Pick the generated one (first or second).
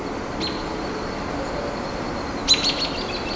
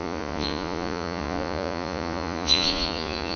second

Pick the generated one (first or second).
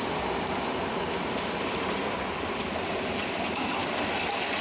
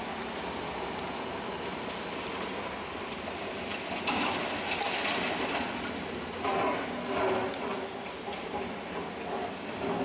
first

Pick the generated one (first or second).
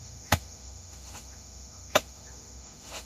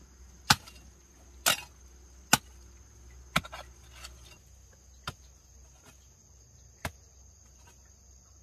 first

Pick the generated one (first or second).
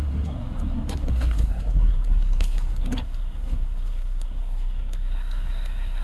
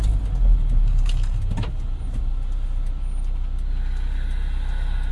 first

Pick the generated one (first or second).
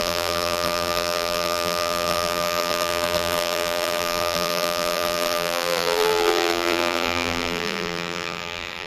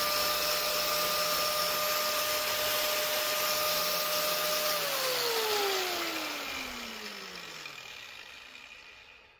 first